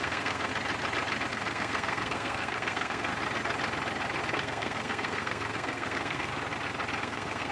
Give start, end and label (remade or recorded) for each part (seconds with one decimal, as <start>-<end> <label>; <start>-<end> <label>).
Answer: 0.0-0.5 remade; 0.5-1.3 recorded; 1.3-3.1 remade; 3.1-4.3 recorded; 4.3-6.3 remade; 6.3-7.0 recorded; 7.0-7.5 remade